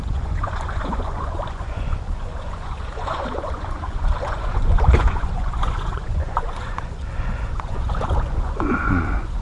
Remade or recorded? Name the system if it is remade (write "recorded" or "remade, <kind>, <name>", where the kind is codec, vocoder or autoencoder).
remade, vocoder, Vocos